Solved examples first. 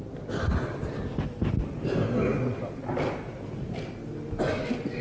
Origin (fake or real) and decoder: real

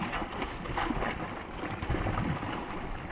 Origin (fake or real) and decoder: real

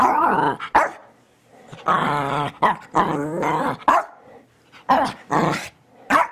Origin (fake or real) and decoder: fake, vocoder, BigVGAN v2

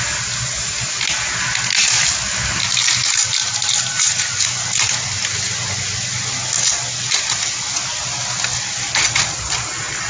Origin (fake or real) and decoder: real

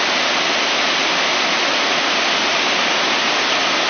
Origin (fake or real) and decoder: real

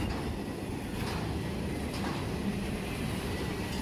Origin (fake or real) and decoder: real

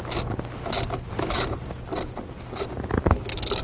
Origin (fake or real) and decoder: real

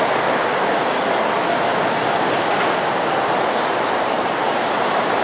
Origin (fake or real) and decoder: real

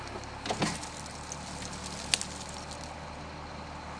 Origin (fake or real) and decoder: real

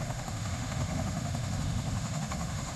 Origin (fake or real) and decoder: fake, autoencoder, DAC-VAE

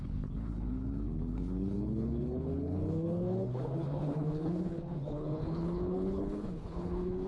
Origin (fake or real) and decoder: fake, codec, HILCodec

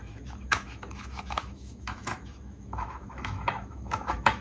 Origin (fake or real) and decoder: fake, autoencoder, DAC-VAE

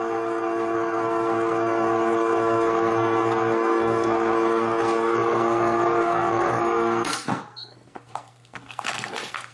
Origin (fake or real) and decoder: fake, codec, SNAC